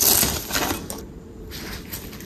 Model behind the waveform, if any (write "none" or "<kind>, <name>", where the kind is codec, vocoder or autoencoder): vocoder, BigVGAN v2